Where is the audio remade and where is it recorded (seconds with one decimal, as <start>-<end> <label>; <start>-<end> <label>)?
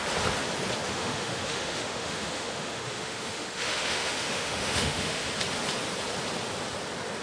0.0-1.0 recorded; 1.0-5.3 remade; 5.3-7.2 recorded